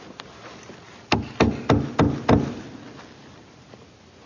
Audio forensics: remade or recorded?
recorded